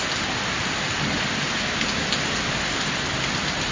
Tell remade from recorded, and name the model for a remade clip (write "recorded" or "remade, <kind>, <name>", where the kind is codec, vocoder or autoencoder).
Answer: recorded